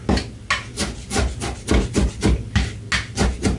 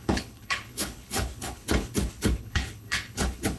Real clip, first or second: first